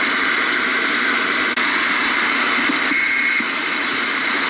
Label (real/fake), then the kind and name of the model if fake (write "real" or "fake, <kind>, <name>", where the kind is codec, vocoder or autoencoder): fake, vocoder, BigVGAN v2